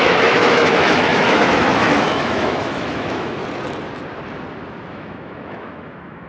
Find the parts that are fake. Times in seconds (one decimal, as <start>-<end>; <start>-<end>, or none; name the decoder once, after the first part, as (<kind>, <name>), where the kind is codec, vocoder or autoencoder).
0.0-3.4 (autoencoder, DAC-VAE); 4.9-6.3